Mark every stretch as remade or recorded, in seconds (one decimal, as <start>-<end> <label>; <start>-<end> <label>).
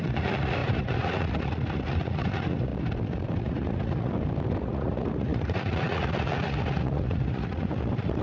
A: 0.0-2.7 remade; 2.7-3.4 recorded; 3.4-4.1 remade; 4.1-4.6 recorded; 4.6-8.2 remade